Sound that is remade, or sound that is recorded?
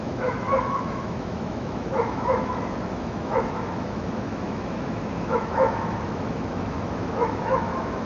remade